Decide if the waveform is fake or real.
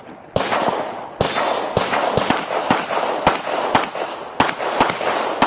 real